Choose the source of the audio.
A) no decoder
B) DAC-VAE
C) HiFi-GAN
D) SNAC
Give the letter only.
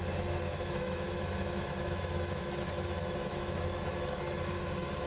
B